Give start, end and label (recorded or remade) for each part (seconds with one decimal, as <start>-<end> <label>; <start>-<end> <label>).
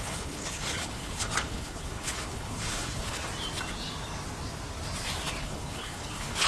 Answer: 0.0-3.2 remade; 3.2-5.4 recorded; 5.4-6.5 remade